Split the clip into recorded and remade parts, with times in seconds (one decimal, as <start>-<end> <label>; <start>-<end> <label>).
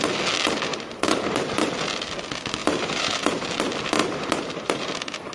0.0-0.7 recorded; 0.7-1.7 remade; 1.7-2.6 recorded; 2.6-3.5 remade; 3.5-4.0 recorded; 4.0-4.7 remade; 4.7-5.3 recorded